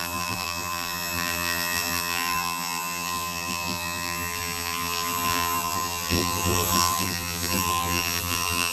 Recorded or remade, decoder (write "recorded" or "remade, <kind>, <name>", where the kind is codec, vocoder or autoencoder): remade, vocoder, BigVGAN v2